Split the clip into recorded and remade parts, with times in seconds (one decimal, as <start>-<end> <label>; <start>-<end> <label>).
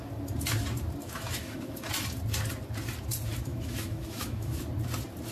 0.0-1.0 recorded; 1.0-1.9 remade; 1.9-3.5 recorded; 3.5-4.6 remade; 4.6-5.3 recorded